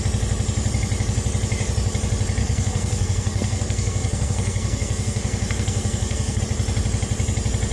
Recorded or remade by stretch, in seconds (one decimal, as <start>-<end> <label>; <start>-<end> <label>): 0.0-2.4 recorded; 2.4-6.4 remade; 6.4-7.7 recorded